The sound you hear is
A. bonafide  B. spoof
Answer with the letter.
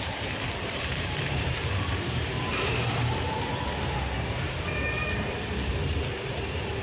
B